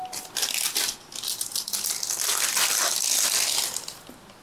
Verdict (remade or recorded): recorded